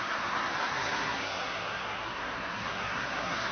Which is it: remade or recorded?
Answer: remade